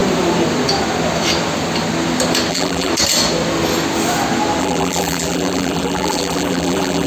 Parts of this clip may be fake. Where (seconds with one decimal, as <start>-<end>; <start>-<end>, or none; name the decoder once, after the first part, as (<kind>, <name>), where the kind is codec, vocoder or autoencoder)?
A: 2.5-2.9 (vocoder, BigVGAN v2); 4.6-7.1

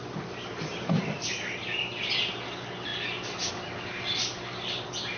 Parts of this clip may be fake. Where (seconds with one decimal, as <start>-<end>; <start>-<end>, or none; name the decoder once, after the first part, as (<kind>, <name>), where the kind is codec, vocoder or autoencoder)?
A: 0.0-2.0 (vocoder, BigVGAN v2)

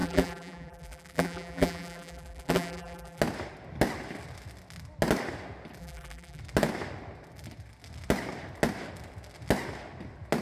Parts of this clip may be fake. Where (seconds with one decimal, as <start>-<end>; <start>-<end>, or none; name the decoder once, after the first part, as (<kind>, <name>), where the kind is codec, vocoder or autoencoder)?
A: 0.0-3.2 (vocoder, BigVGAN v2); 5.8-6.4

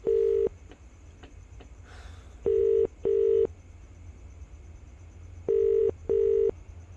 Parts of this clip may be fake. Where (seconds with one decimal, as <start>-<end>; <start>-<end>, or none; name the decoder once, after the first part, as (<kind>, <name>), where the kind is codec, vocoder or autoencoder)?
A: 0.5-2.6 (vocoder, BigVGAN v2)

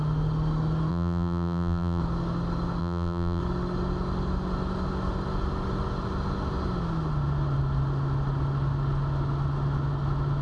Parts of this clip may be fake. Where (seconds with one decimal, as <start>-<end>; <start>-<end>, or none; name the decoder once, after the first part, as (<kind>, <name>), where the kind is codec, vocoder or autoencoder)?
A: 0.9-2.0 (vocoder, BigVGAN v2); 2.8-3.4

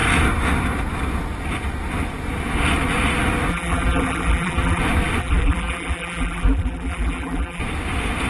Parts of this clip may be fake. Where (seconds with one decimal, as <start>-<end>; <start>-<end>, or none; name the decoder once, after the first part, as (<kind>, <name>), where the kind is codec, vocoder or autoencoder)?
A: 3.5-4.8 (vocoder, BigVGAN v2); 5.2-7.6